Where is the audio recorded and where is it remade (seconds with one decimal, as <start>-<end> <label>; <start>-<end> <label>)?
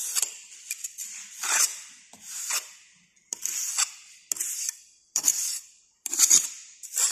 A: 0.0-1.7 remade; 1.7-4.5 recorded; 4.5-7.1 remade